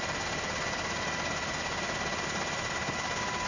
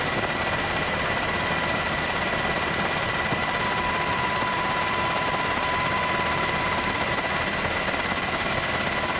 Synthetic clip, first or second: second